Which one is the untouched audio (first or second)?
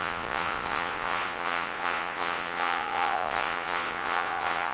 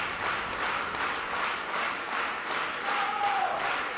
second